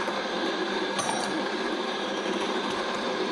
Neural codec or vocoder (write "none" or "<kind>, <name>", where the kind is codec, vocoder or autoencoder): vocoder, BigVGAN v2